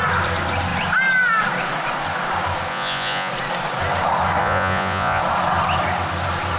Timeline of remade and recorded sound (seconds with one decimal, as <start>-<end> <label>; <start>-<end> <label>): 0.0-2.7 recorded; 2.7-3.3 remade; 3.3-4.4 recorded; 4.4-5.2 remade; 5.2-6.6 recorded